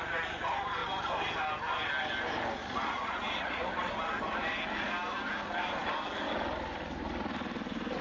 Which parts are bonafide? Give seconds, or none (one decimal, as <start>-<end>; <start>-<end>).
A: 0.0-2.6; 3.9-8.0